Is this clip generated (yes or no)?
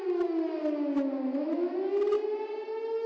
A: no